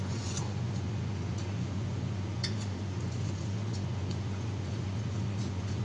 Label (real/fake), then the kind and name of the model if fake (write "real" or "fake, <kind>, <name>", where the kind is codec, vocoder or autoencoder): fake, vocoder, Vocos